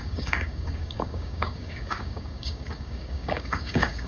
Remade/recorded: remade